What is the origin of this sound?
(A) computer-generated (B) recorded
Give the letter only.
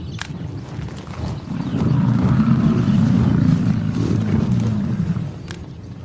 B